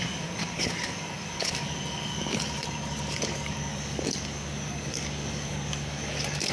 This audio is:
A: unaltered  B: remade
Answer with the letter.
B